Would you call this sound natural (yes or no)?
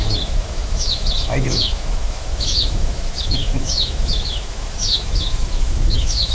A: no